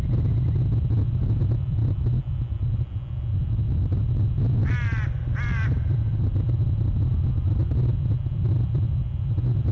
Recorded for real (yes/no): yes